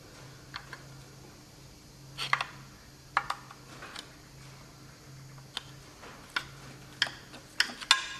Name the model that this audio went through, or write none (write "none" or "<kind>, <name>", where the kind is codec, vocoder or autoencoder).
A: none